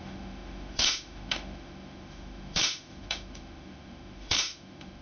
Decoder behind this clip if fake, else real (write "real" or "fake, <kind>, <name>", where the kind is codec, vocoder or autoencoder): fake, autoencoder, DAC-VAE